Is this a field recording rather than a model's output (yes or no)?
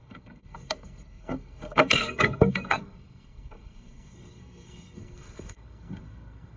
no